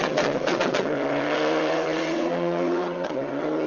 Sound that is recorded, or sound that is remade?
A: remade